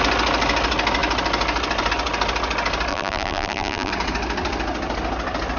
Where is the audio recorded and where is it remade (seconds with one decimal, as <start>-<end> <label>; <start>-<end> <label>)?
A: 0.0-2.9 recorded; 2.9-3.9 remade; 3.9-5.6 recorded

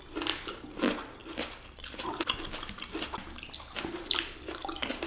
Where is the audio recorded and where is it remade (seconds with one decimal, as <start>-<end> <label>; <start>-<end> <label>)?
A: 0.0-5.1 recorded